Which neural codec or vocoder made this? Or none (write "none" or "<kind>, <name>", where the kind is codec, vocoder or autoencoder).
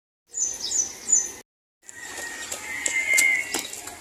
none